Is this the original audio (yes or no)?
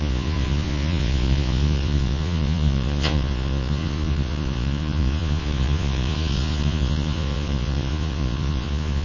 no